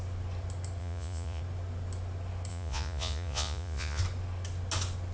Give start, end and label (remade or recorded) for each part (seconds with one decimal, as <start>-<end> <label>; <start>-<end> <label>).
0.0-0.8 recorded; 0.8-1.4 remade; 1.4-2.5 recorded; 2.5-4.0 remade; 4.0-5.1 recorded